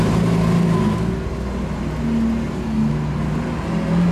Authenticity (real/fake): real